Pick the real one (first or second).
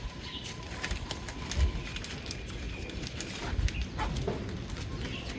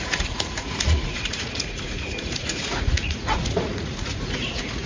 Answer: first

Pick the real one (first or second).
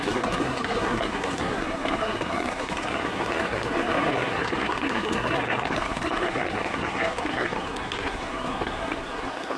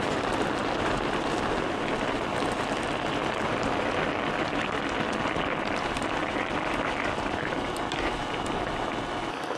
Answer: second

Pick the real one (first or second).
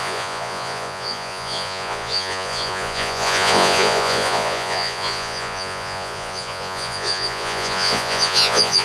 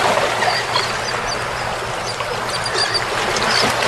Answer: second